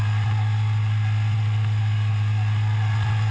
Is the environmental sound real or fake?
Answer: real